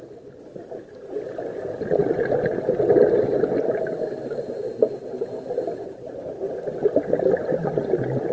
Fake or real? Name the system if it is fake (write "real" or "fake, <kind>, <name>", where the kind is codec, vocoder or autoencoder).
real